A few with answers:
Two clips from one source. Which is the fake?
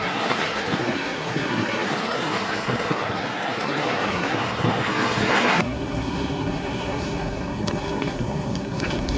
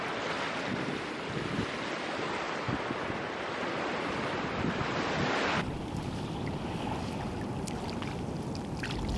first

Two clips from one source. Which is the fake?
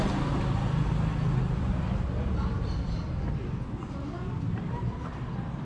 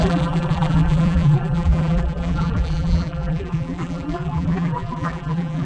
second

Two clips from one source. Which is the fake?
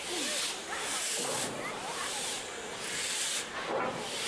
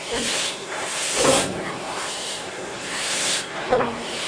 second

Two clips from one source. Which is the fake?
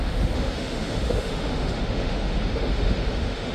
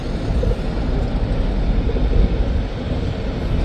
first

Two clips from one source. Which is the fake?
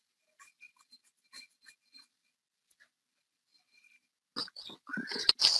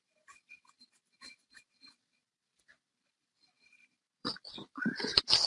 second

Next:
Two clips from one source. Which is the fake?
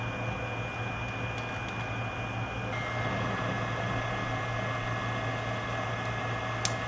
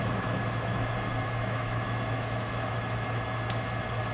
second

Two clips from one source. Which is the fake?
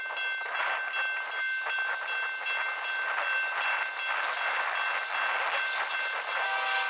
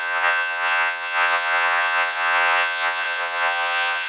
second